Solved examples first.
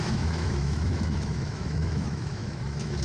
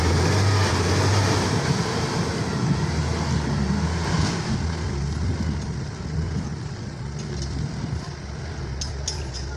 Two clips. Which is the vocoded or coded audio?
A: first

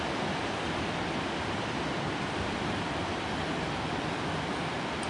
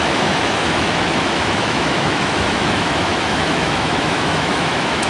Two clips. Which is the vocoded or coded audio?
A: second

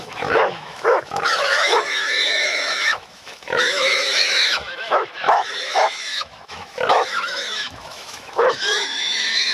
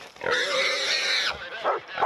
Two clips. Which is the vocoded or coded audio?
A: first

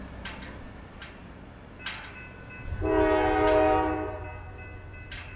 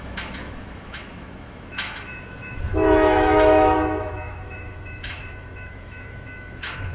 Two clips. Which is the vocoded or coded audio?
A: second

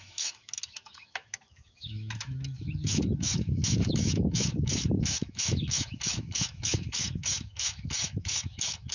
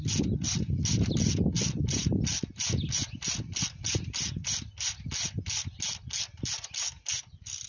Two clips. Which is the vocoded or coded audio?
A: first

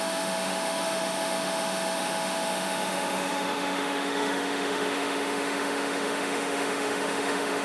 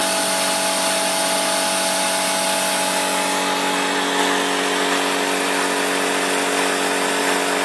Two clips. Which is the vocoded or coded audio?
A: first